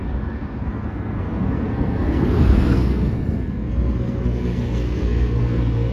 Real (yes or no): no